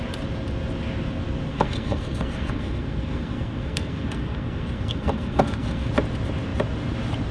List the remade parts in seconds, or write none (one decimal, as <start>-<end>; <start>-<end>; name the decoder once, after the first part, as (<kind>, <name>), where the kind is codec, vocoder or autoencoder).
1.5-5.9 (codec, SNAC)